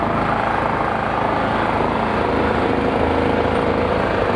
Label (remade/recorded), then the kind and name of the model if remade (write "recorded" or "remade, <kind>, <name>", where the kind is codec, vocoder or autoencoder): recorded